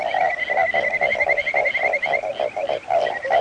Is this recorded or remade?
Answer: recorded